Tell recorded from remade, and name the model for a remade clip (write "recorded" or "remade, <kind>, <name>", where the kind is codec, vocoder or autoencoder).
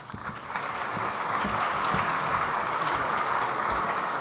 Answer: remade, codec, DAC